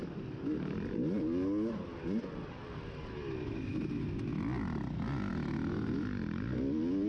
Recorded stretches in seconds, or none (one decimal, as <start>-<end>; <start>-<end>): 0.0-7.1